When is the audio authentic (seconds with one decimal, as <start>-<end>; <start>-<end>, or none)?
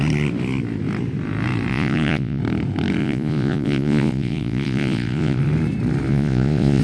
0.0-1.7; 2.4-3.0; 5.4-6.1